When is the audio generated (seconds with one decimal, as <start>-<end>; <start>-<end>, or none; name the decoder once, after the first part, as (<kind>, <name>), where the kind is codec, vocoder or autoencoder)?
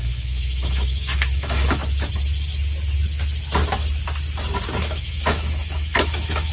0.0-1.8 (autoencoder, DAC-VAE); 4.8-6.5